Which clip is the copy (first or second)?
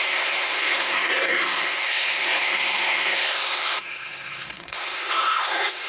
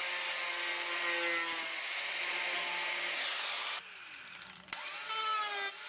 first